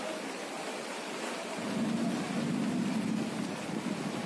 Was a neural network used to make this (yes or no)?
no